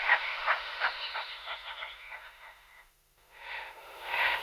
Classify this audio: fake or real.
fake